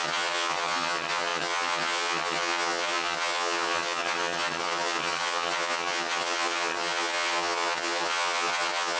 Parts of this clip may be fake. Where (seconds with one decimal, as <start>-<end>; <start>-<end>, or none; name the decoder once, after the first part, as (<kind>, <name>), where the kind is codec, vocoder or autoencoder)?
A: 0.0-9.0 (vocoder, HiFi-GAN)